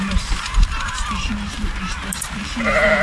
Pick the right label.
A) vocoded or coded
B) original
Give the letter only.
A